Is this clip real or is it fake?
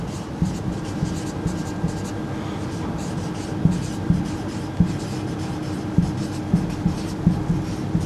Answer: fake